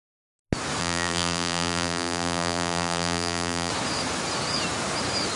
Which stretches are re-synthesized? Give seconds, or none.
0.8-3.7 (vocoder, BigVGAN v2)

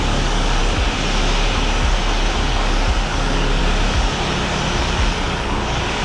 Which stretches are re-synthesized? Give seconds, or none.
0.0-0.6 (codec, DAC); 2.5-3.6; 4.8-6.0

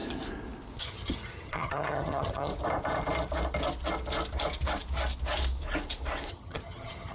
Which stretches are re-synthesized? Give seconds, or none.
0.8-2.5 (vocoder, HiFi-GAN); 6.3-7.1